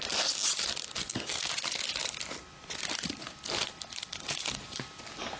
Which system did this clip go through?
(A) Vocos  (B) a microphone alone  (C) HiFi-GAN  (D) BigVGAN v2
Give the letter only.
B